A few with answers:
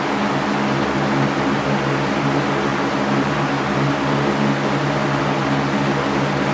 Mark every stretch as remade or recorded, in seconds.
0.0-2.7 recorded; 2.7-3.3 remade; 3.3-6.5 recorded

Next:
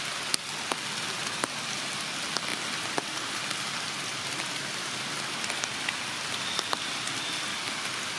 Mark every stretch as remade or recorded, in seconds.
0.0-8.2 recorded

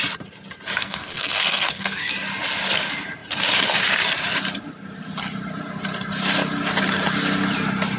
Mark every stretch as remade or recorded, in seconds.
0.0-0.8 recorded; 0.8-2.1 remade; 2.1-8.0 recorded

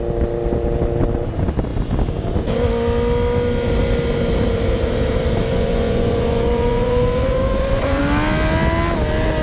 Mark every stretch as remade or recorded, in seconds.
0.0-5.5 recorded; 5.5-8.0 remade; 8.0-9.4 recorded

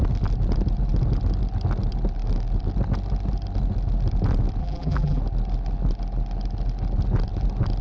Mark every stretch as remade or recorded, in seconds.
0.0-4.6 recorded; 4.6-5.2 remade; 5.2-7.8 recorded

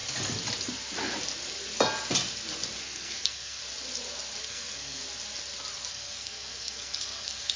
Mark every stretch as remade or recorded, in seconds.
0.0-2.8 recorded; 2.8-3.6 remade; 3.6-4.4 recorded; 4.4-5.0 remade; 5.0-5.9 recorded; 5.9-7.6 remade

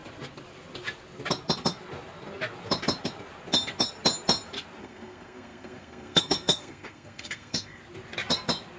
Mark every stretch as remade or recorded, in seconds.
0.0-4.8 recorded; 4.8-7.8 remade; 7.8-8.8 recorded

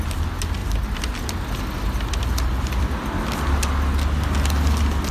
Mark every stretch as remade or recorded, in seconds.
0.0-5.1 recorded